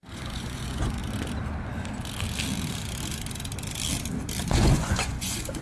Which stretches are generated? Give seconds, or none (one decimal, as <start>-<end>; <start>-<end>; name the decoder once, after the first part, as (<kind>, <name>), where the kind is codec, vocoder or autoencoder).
0.0-1.0 (vocoder, Vocos); 4.4-5.6